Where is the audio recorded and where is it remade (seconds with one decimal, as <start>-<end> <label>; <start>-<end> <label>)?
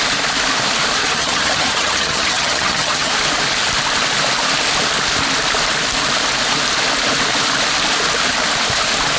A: 0.0-1.0 recorded; 1.0-3.1 remade; 3.1-9.2 recorded